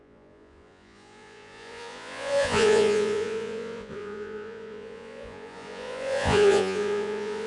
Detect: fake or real fake